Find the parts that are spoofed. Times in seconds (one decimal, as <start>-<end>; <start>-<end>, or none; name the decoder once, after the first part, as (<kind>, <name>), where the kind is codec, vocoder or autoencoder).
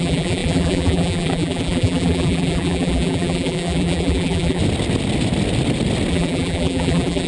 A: 0.0-4.6 (vocoder, BigVGAN v2); 6.1-7.3